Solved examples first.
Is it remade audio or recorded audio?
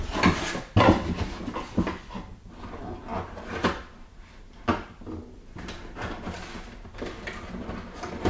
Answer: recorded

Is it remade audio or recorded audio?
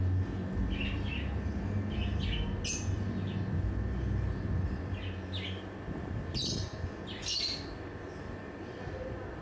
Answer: recorded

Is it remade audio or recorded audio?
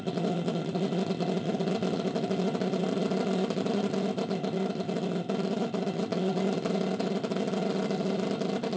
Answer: recorded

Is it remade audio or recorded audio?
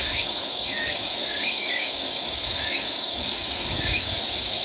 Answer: remade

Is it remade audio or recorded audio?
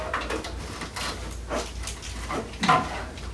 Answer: recorded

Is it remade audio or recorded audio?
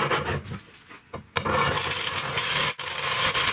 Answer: recorded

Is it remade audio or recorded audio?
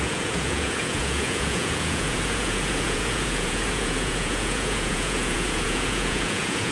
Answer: remade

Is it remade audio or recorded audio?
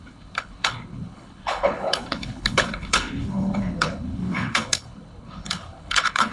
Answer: remade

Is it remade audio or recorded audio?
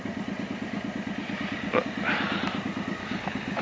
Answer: recorded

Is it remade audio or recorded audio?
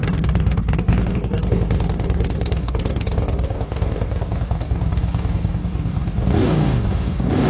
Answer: remade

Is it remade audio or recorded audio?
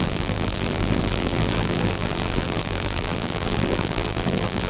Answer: remade